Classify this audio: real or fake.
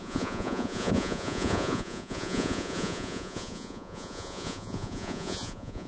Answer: fake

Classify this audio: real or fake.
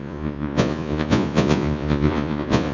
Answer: fake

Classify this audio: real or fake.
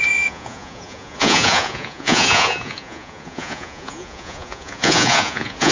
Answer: fake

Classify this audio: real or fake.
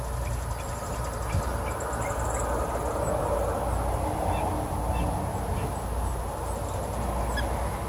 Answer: real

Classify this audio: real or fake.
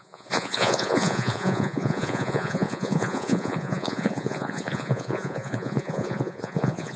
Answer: fake